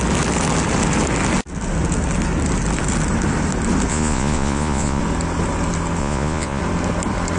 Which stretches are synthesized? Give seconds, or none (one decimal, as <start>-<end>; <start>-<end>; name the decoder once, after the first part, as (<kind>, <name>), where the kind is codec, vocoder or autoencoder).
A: 3.9-5.0 (vocoder, Vocos); 6.0-6.6